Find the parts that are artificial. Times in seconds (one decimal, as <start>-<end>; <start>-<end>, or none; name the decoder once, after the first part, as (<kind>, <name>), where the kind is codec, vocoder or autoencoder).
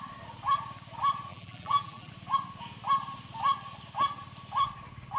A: 1.3-2.1 (vocoder, BigVGAN v2)